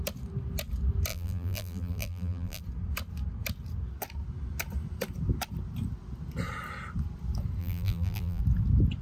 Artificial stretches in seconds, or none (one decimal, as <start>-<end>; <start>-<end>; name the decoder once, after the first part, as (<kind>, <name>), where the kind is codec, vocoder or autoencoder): 1.1-2.6 (vocoder, BigVGAN v2); 7.6-8.4